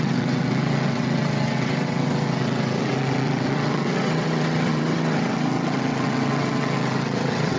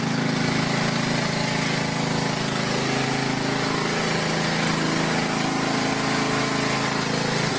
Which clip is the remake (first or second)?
first